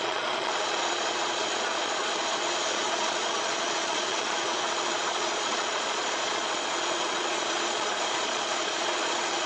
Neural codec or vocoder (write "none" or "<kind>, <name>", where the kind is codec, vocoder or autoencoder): vocoder, Vocos